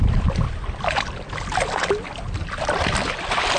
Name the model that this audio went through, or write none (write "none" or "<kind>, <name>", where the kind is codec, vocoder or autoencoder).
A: none